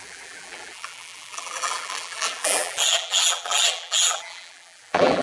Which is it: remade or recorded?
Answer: remade